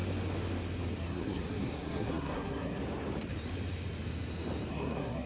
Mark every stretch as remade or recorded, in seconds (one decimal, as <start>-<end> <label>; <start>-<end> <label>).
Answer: 0.0-1.0 recorded; 1.0-2.8 remade; 2.8-4.7 recorded; 4.7-5.3 remade